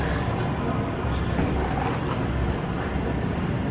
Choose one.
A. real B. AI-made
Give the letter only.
A